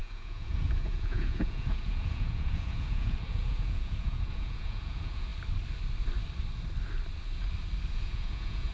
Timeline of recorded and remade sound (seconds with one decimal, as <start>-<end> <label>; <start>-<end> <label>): 0.0-5.3 remade; 5.3-7.9 recorded; 7.9-8.7 remade